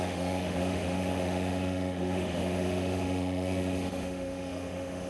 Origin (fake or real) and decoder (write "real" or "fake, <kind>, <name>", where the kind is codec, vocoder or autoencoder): fake, autoencoder, DAC-VAE